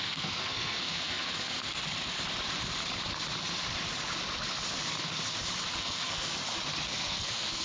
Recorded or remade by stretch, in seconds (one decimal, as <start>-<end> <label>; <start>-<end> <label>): 0.0-1.8 remade; 1.8-5.8 recorded; 5.8-6.4 remade; 6.4-6.9 recorded; 6.9-7.6 remade